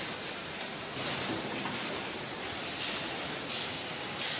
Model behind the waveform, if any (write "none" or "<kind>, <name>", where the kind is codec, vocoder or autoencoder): none